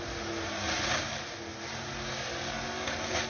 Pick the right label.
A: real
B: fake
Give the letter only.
A